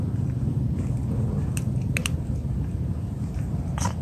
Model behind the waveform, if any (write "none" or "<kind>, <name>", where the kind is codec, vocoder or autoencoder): none